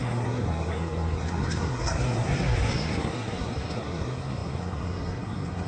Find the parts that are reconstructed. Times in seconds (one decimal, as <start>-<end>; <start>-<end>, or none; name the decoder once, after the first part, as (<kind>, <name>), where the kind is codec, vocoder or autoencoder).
0.0-5.7 (codec, SNAC)